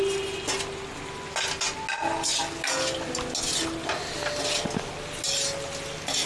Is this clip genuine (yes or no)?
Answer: yes